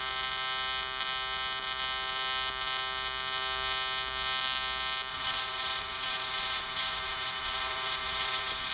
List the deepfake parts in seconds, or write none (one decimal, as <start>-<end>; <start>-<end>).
5.1-8.7